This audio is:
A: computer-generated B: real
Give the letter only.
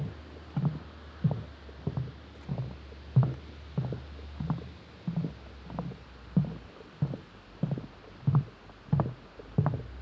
B